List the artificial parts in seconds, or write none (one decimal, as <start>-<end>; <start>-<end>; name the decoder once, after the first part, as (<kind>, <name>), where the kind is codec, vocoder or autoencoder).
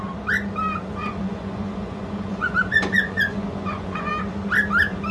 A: 1.0-4.1 (vocoder, Vocos)